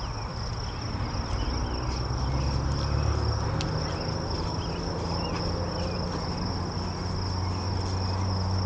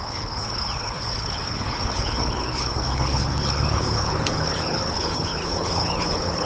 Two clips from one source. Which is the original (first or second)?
first